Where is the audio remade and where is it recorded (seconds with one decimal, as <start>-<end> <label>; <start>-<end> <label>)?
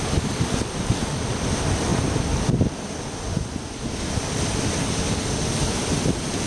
0.0-6.5 recorded